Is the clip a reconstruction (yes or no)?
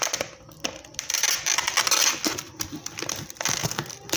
no